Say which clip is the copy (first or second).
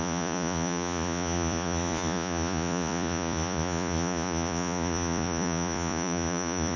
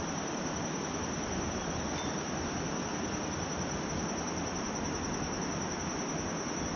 first